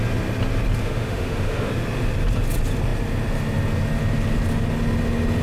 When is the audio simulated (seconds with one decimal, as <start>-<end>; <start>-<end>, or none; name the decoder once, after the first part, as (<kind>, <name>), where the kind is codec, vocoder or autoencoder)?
0.8-1.7 (autoencoder, DAC-VAE)

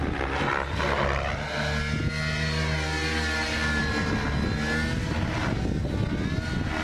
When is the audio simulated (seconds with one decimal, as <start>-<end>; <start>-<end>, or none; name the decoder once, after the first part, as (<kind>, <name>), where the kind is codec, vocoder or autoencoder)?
none

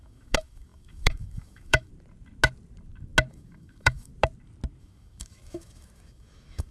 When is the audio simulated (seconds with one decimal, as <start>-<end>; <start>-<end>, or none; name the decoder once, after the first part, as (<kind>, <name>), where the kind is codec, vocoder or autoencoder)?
0.0-1.9 (autoencoder, DAC-VAE); 3.3-4.1; 4.8-6.7

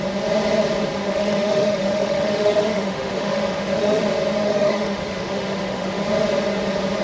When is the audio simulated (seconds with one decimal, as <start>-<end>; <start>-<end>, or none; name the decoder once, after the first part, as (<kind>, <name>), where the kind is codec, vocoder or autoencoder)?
1.0-4.0 (autoencoder, DAC-VAE); 4.4-6.1

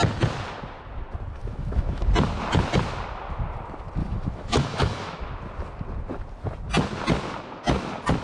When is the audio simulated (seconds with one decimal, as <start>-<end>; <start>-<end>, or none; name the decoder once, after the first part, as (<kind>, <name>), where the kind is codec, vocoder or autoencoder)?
1.4-2.0 (autoencoder, DAC-VAE); 4.0-5.2

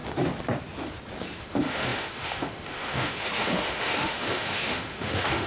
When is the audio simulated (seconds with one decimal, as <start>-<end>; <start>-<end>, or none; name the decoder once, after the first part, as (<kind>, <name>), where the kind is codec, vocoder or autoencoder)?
1.4-5.5 (autoencoder, DAC-VAE)

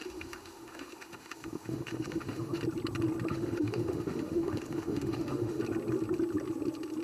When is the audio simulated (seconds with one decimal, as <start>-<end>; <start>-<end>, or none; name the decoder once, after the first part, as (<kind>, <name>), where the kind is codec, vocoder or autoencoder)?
0.0-2.6 (autoencoder, DAC-VAE); 3.3-5.6